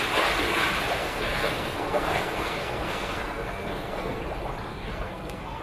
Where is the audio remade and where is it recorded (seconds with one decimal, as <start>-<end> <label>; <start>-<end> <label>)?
0.0-1.0 recorded; 1.0-4.2 remade; 4.2-4.7 recorded; 4.7-5.6 remade